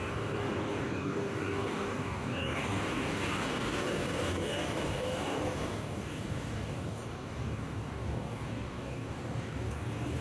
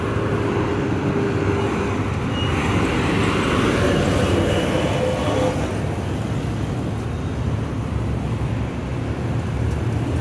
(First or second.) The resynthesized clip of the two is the first